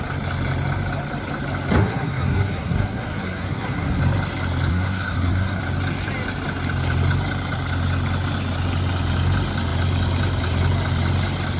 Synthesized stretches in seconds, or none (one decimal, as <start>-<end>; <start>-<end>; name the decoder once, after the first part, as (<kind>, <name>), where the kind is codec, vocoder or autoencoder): 1.8-4.0 (codec, SNAC); 4.7-5.6